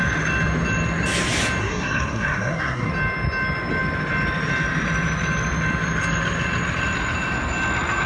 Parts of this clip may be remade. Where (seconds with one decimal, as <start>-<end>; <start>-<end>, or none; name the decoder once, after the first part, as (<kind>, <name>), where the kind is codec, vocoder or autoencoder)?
1.6-2.9 (codec, SNAC)

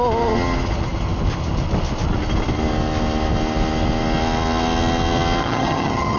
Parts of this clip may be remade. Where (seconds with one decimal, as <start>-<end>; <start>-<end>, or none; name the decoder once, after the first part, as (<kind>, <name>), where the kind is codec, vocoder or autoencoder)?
5.4-6.2 (vocoder, HiFi-GAN)

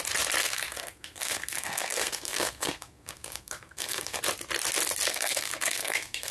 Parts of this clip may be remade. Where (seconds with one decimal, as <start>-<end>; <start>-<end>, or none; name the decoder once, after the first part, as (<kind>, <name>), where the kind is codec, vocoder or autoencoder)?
0.4-4.2 (codec, SNAC); 5.1-6.3

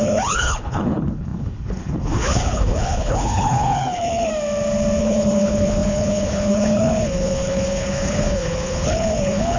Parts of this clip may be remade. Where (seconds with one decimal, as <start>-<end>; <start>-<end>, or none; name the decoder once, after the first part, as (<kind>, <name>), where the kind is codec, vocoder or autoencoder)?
0.0-4.3 (codec, HILCodec); 5.0-9.6

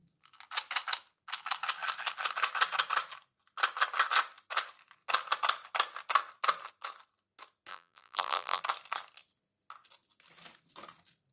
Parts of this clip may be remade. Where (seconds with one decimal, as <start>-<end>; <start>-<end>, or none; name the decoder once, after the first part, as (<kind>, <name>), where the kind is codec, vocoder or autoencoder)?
7.7-8.6 (vocoder, BigVGAN v2)

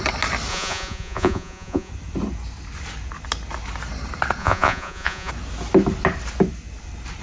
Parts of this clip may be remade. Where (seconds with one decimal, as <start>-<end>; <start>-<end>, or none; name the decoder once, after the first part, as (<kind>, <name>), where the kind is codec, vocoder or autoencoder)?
0.5-1.9 (vocoder, Vocos); 4.4-5.3